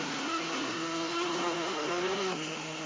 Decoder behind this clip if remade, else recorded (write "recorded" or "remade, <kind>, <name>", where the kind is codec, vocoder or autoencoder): remade, codec, SNAC